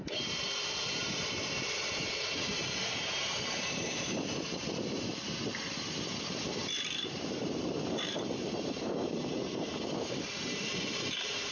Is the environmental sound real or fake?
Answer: fake